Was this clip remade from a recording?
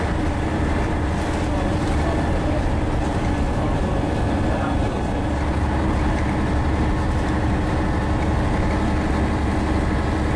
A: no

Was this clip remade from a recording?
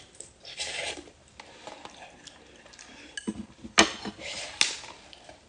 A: no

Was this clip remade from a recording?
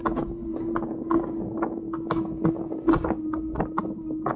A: no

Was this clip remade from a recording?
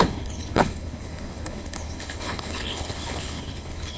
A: yes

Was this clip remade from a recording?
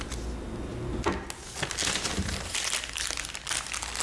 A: no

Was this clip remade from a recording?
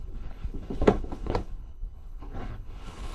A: yes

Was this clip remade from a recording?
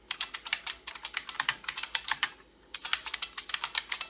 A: no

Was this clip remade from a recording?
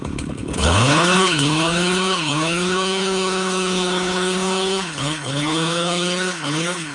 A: yes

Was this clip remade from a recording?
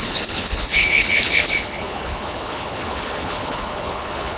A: yes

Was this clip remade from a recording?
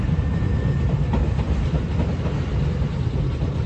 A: no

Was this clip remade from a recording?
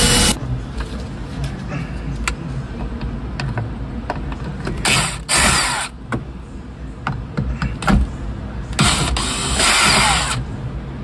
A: no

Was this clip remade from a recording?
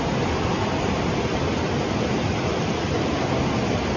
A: no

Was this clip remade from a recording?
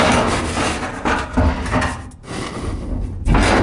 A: no